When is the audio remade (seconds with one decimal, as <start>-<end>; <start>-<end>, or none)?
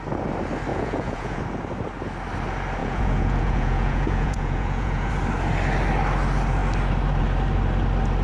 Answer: 0.7-1.4; 2.8-5.1